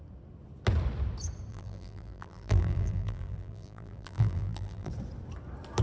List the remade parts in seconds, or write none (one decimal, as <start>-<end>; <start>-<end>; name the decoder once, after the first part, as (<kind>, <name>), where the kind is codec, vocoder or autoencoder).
1.5-4.9 (vocoder, BigVGAN v2)